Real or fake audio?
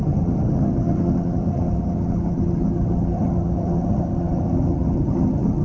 fake